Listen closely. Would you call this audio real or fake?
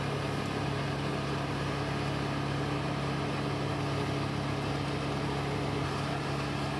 real